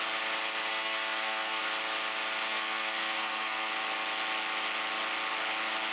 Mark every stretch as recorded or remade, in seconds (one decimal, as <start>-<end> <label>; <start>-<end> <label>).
0.0-0.7 recorded; 0.7-1.6 remade; 1.6-2.5 recorded; 2.5-3.7 remade; 3.7-5.9 recorded